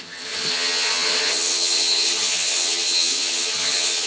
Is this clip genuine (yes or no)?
no